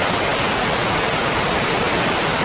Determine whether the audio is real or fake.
real